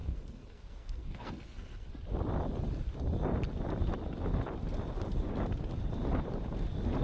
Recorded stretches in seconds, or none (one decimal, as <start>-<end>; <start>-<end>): 1.9-7.0

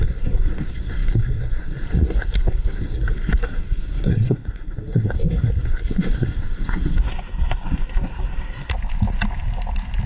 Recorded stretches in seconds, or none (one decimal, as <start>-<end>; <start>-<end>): 8.7-10.1

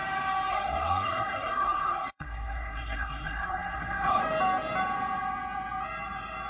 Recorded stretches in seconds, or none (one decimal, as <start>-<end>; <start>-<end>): 0.0-0.5; 4.2-6.5

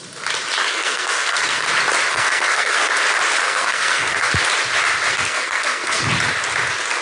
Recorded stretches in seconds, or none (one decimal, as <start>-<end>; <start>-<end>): 0.0-0.7; 1.7-2.1; 2.9-3.4; 4.3-5.1; 6.0-7.0

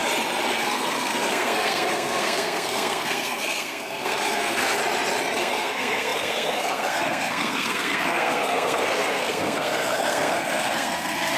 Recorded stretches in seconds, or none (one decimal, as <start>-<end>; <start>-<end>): 0.0-0.5; 4.8-5.4

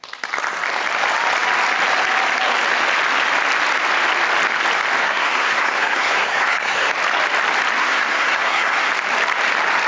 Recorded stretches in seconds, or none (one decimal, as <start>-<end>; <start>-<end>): 0.0-5.0; 6.9-7.8; 8.9-9.9

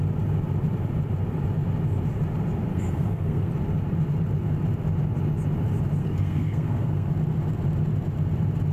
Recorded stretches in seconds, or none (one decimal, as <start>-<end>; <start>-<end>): 0.0-2.7; 3.5-6.0; 7.1-8.7